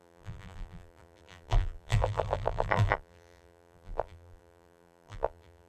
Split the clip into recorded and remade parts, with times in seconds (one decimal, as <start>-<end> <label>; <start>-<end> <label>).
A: 0.0-5.7 remade